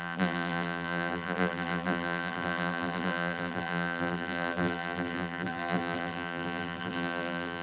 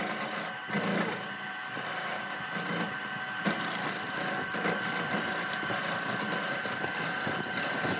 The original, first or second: second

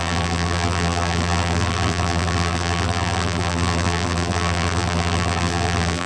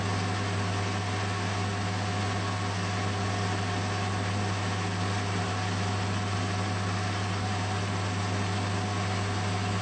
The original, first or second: second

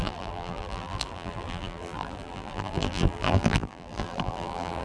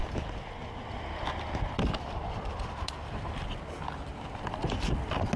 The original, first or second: second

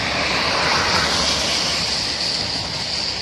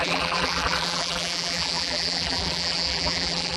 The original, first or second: first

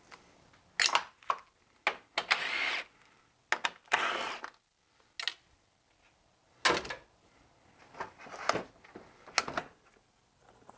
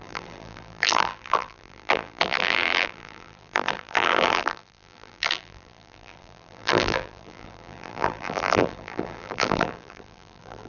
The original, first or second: first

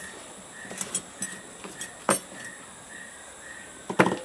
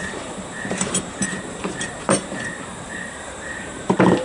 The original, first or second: first